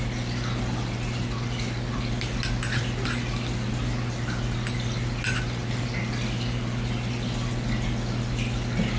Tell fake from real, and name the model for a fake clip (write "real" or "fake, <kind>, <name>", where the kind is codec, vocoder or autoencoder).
real